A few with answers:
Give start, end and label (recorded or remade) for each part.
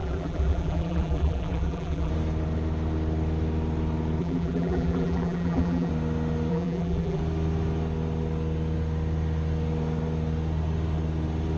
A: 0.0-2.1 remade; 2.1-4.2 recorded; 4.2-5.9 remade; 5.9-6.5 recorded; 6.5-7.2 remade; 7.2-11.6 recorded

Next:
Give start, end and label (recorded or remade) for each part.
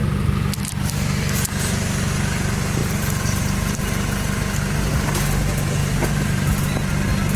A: 0.0-2.8 recorded; 2.8-3.8 remade; 3.8-5.8 recorded; 5.8-6.9 remade; 6.9-7.4 recorded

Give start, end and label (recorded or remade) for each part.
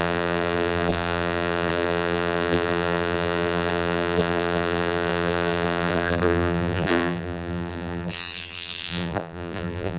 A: 0.0-10.0 remade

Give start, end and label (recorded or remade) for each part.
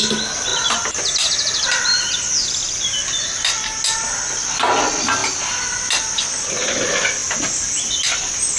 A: 0.0-8.6 recorded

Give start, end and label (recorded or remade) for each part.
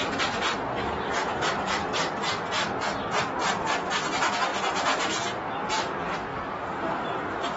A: 0.0-6.3 recorded; 6.3-7.6 remade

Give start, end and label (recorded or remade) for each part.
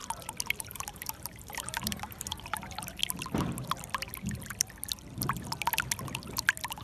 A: 0.0-0.6 recorded; 0.6-3.0 remade; 3.0-6.8 recorded